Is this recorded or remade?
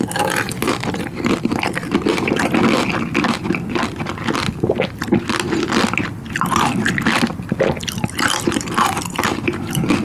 recorded